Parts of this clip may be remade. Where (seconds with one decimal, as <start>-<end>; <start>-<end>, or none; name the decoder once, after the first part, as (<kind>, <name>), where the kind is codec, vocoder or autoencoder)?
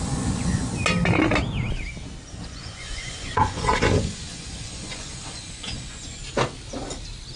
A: 0.0-0.7 (vocoder, Vocos); 2.3-6.2